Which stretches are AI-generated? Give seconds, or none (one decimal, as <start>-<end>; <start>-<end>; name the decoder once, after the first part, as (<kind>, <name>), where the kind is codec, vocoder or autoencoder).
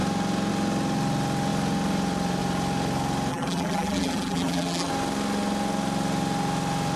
3.3-4.9 (vocoder, BigVGAN v2)